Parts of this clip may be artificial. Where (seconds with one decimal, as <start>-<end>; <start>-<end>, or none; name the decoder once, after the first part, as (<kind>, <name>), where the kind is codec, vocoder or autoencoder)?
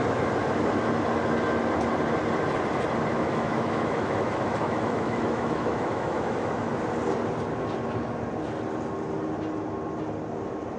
3.1-6.7 (autoencoder, DAC-VAE)